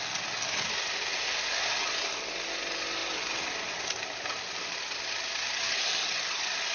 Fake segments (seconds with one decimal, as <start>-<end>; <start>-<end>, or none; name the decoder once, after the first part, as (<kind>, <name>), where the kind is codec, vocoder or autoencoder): none